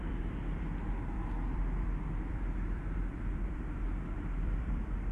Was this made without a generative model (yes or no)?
no